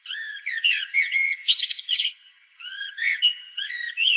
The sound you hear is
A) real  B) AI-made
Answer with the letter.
B